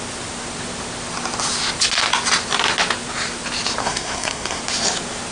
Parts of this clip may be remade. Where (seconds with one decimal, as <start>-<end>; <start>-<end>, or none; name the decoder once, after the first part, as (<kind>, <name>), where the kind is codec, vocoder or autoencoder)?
3.8-4.6 (codec, SNAC)